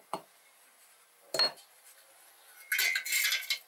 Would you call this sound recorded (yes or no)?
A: yes